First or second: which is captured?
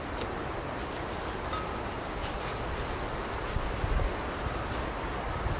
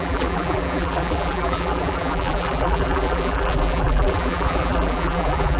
first